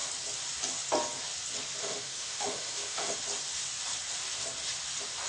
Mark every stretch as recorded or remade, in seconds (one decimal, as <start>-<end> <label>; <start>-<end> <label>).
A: 0.0-1.8 recorded; 1.8-3.2 remade; 3.2-5.3 recorded